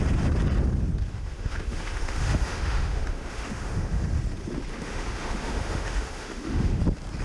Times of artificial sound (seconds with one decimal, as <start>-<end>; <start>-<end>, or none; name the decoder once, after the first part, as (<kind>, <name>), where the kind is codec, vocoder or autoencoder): 1.1-4.0 (autoencoder, DAC-VAE); 4.7-6.8